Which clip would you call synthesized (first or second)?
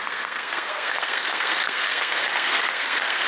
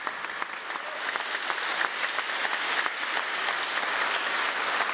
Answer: first